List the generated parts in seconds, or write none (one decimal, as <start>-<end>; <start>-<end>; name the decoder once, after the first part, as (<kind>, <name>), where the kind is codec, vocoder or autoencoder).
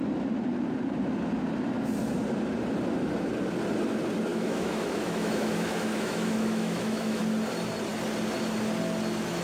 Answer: 4.3-7.2 (autoencoder, DAC-VAE)